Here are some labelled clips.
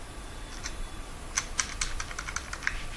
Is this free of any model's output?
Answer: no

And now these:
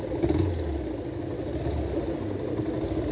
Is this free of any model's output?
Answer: yes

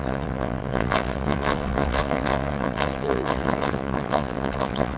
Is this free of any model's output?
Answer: no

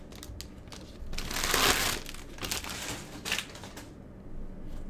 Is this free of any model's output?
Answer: yes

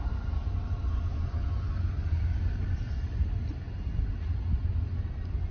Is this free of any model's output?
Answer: yes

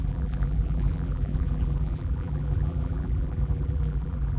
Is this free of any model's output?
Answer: no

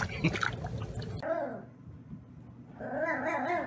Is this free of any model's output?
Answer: yes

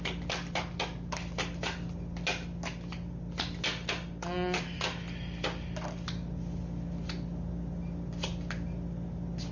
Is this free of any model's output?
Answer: yes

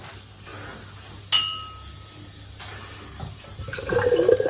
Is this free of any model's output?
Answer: yes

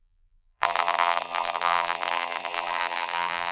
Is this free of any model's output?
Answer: no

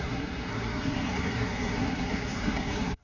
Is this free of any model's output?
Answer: no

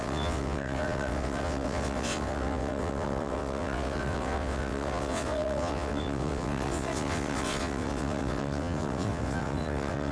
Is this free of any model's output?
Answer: no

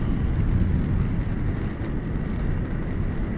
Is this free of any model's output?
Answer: yes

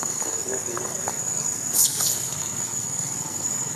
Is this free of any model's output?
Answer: no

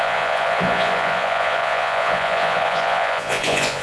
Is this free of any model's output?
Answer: no